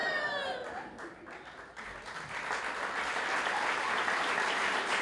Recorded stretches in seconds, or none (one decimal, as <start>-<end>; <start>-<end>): 0.0-5.0